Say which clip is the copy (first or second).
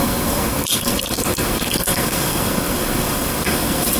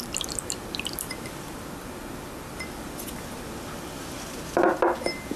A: first